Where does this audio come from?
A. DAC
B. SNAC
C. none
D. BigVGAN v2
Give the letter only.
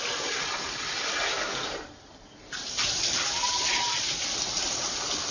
C